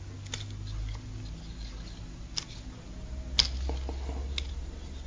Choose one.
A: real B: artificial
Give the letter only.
A